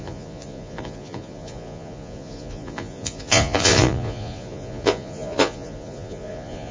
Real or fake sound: fake